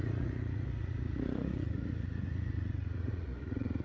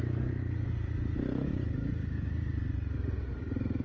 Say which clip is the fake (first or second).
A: first